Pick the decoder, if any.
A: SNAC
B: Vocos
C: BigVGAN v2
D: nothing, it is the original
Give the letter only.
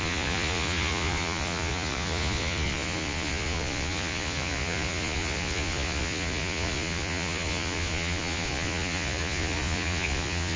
B